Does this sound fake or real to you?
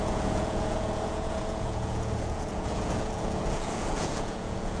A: fake